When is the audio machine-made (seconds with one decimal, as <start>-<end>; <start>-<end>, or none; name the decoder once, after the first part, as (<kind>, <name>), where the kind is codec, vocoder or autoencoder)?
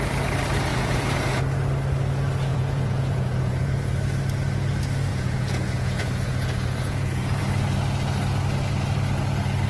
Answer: 0.7-1.4 (vocoder, Vocos); 2.5-3.9; 5.1-7.4